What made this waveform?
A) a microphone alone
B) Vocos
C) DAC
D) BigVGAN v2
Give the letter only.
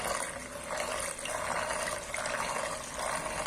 A